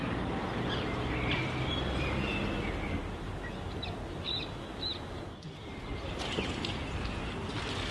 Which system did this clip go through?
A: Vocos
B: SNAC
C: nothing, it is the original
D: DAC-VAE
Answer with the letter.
C